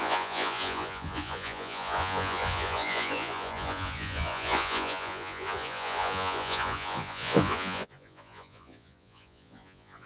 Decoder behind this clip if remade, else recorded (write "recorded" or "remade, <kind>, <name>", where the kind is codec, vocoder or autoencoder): remade, vocoder, Vocos